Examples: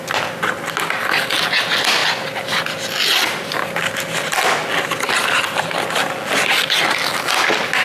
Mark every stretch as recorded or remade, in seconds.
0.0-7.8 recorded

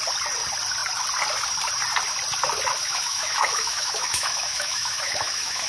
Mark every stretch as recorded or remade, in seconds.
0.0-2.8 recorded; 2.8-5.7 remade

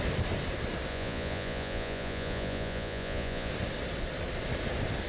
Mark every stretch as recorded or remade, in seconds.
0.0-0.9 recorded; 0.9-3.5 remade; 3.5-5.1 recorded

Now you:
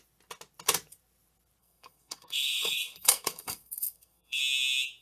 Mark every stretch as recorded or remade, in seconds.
0.0-1.6 recorded; 1.6-4.4 remade; 4.4-5.0 recorded